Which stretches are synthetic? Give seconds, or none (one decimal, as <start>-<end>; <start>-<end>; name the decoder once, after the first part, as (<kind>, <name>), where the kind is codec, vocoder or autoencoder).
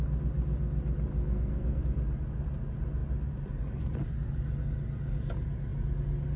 1.1-1.8 (codec, SNAC)